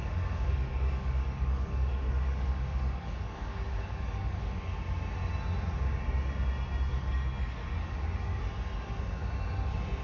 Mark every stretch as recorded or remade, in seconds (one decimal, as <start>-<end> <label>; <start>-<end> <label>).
0.0-4.6 remade; 4.6-6.9 recorded; 6.9-8.4 remade; 8.4-10.0 recorded